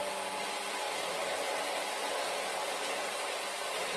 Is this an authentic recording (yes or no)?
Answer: yes